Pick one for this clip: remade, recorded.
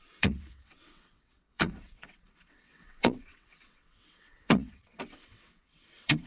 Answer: remade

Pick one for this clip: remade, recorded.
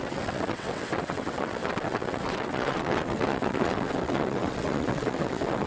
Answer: remade